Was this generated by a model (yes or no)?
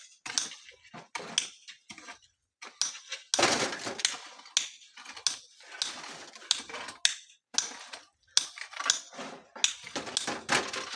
no